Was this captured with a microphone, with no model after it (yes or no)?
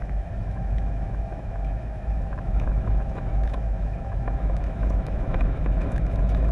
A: no